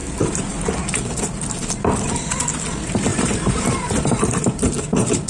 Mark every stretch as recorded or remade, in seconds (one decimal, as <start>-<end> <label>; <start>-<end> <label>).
0.0-3.1 recorded; 3.1-5.3 remade